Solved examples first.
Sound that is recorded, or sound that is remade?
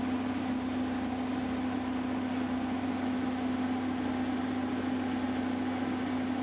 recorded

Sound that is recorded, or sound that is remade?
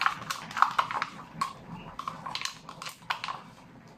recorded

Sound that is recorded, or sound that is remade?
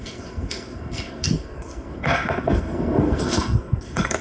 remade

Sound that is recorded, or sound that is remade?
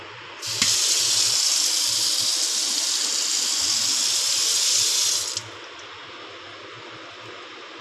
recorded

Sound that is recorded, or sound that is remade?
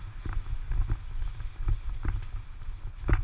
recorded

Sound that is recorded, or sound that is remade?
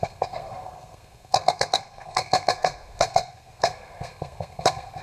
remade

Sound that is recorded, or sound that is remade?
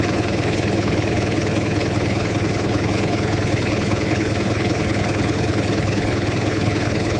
remade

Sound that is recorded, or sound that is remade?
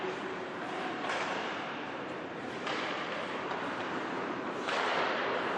remade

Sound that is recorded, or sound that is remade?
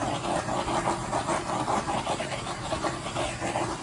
recorded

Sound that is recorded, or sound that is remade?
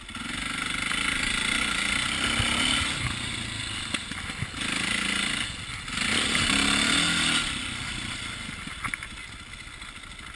recorded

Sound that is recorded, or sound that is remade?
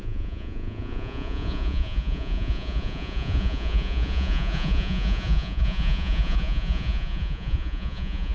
remade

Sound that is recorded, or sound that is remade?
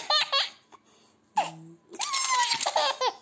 recorded